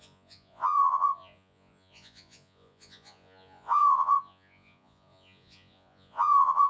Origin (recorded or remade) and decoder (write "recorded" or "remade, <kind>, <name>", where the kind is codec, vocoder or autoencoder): remade, vocoder, Vocos